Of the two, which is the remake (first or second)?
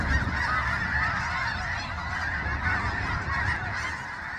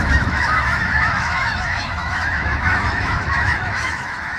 second